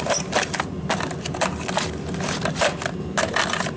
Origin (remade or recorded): recorded